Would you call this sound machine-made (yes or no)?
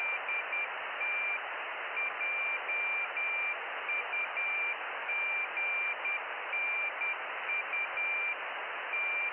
no